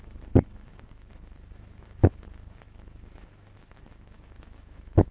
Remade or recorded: remade